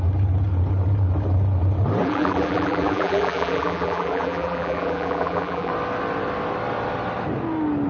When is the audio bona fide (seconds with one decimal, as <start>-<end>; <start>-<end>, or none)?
0.0-2.0; 5.7-7.9